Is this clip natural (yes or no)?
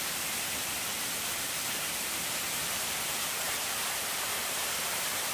no